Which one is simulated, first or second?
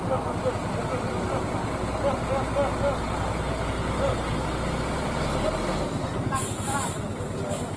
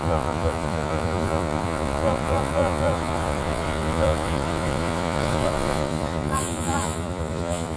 second